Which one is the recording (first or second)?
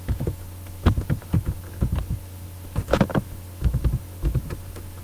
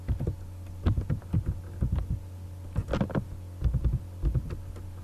second